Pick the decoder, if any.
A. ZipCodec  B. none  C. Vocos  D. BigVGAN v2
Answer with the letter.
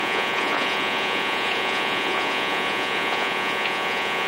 C